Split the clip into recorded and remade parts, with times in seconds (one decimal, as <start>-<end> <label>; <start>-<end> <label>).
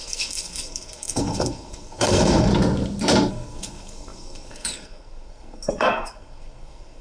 0.0-2.5 remade; 2.5-3.3 recorded; 3.3-7.0 remade